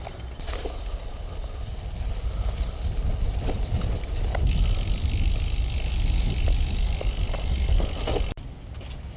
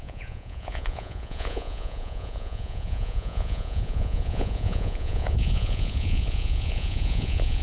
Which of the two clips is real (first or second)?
first